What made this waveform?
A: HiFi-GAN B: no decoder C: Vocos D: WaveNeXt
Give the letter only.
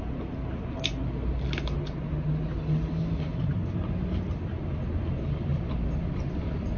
B